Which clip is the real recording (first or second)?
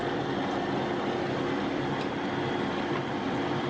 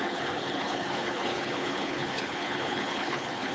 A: first